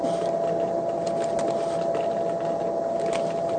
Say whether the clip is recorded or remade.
recorded